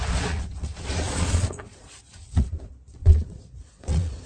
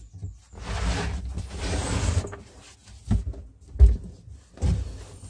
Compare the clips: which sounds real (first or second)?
second